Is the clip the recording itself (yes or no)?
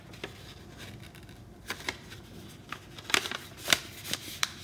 yes